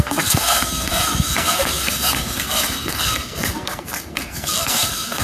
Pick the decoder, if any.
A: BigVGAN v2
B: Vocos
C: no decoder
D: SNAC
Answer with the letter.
D